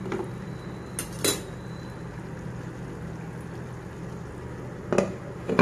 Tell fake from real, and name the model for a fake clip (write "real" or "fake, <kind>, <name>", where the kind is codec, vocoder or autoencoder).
real